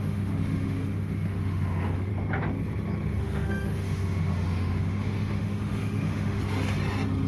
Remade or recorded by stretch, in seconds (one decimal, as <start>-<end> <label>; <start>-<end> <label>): 0.0-2.1 remade; 2.1-3.2 recorded; 3.2-6.4 remade; 6.4-7.3 recorded